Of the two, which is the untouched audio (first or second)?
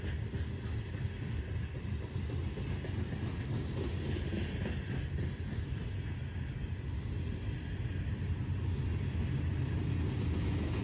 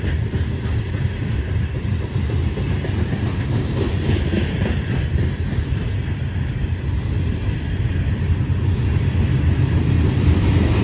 first